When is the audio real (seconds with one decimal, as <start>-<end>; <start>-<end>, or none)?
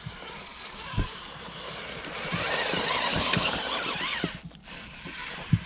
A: 0.0-0.5; 1.8-3.1; 3.6-5.7